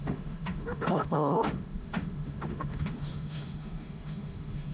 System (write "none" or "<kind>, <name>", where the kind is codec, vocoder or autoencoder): autoencoder, DAC-VAE